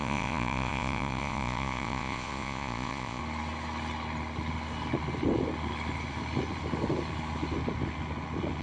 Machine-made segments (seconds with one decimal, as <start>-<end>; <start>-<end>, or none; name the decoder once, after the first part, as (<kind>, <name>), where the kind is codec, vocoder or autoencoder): 0.0-3.2 (vocoder, Vocos)